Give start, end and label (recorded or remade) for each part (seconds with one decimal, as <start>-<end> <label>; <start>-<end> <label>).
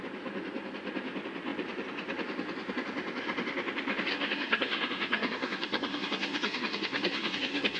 0.0-4.1 recorded; 4.1-7.8 remade